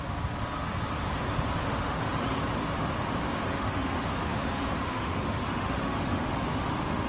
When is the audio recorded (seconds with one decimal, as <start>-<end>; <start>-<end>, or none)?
0.0-1.6; 2.1-3.5